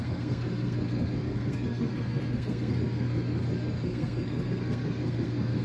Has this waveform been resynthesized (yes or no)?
yes